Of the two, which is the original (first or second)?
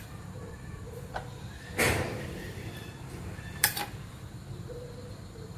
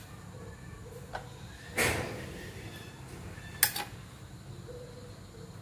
second